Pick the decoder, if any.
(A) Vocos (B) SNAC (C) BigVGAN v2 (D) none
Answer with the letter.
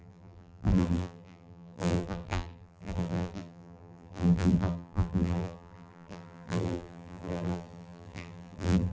C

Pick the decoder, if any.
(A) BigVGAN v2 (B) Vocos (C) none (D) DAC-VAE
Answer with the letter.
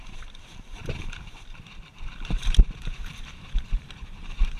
A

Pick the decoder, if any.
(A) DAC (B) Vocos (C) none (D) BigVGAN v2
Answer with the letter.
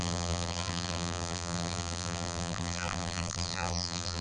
D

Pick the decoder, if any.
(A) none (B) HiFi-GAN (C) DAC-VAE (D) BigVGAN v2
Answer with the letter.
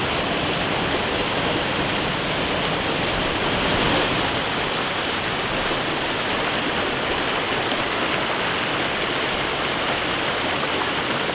A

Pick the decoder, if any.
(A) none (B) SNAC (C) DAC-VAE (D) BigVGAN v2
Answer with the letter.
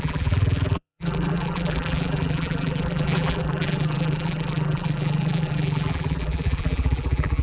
D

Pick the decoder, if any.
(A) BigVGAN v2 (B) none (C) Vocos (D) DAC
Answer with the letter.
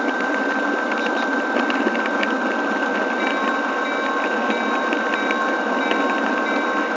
B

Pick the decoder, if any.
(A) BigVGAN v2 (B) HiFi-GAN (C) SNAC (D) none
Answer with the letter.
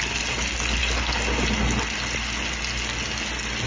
D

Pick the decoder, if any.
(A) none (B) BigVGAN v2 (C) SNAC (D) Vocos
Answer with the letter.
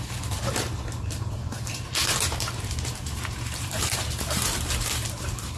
B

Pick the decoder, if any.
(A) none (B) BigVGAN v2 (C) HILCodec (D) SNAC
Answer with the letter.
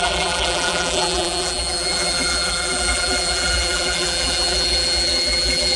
B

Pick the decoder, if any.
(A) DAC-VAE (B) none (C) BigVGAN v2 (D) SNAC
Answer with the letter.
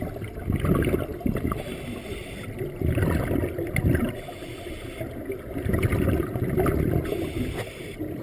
B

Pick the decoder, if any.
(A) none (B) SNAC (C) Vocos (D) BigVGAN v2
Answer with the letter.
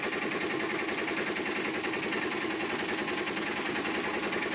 A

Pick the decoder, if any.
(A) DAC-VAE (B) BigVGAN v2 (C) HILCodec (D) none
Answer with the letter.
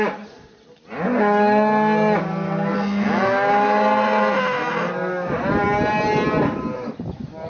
D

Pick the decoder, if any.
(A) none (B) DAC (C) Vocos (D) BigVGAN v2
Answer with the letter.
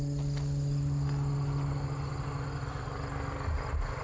A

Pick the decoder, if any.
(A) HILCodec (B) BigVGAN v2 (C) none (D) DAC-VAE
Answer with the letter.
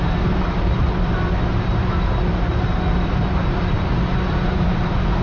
B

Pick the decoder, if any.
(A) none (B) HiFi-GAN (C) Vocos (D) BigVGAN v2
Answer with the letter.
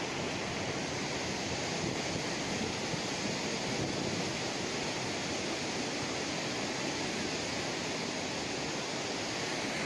A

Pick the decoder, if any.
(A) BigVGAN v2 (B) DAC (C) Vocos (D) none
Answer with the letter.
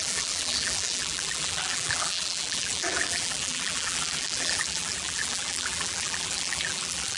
A